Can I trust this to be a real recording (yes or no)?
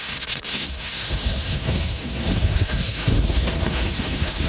no